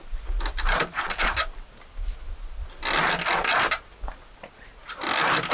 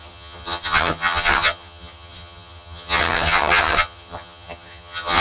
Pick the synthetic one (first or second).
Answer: second